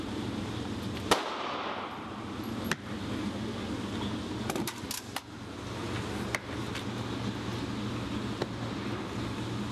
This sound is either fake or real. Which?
real